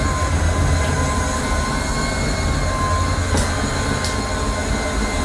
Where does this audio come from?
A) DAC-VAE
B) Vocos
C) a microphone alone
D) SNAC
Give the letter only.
C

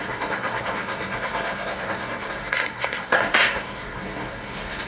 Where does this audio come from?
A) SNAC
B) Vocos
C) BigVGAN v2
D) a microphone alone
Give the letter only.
A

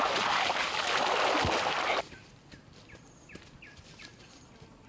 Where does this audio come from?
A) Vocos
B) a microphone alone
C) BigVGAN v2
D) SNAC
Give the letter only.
B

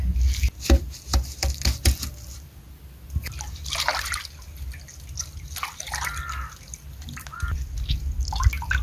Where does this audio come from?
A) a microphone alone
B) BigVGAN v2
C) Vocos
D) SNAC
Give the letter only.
A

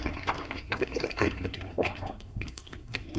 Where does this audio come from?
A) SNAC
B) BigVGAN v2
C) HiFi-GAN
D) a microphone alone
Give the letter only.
A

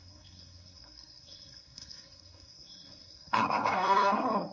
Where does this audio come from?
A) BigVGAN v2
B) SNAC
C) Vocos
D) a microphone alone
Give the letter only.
B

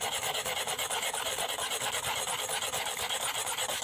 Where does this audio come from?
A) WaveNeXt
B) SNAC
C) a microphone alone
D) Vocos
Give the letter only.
C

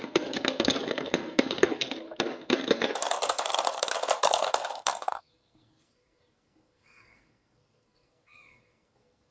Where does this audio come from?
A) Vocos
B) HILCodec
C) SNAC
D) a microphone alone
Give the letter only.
C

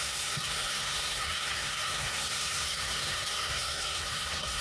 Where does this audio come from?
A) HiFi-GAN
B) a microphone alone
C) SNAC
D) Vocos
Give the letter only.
C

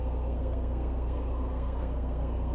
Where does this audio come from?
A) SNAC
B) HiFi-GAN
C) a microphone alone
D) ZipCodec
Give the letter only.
A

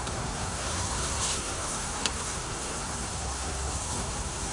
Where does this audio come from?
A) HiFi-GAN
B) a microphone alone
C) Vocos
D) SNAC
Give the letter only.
D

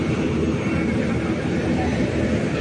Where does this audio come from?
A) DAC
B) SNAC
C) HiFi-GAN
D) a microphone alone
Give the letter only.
D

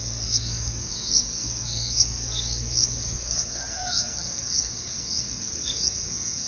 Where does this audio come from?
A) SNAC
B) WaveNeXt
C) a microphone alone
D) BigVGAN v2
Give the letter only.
A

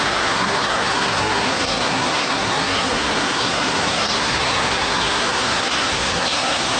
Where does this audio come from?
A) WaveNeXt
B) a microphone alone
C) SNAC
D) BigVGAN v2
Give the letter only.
C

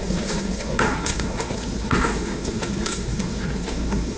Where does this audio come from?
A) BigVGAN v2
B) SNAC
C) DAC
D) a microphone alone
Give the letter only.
B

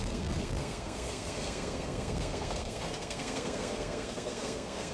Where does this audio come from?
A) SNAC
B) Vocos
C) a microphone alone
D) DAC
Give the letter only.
A